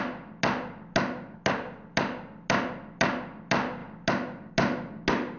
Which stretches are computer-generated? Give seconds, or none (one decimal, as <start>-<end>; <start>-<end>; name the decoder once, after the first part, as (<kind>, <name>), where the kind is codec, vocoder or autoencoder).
none